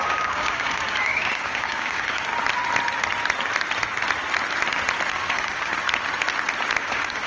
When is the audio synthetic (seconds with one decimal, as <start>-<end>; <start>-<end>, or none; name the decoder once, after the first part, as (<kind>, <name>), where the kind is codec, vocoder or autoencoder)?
0.0-2.3 (codec, DAC); 5.1-5.7; 6.8-7.3